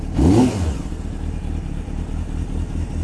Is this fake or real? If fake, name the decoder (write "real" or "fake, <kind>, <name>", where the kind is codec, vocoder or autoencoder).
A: real